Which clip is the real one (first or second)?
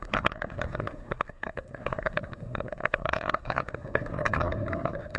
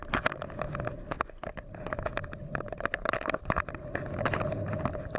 second